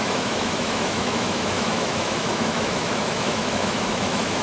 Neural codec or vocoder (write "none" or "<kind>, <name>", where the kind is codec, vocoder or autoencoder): autoencoder, DAC-VAE